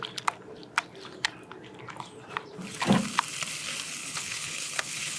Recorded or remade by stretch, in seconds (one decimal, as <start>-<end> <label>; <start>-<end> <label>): 0.0-4.0 recorded; 4.0-5.2 remade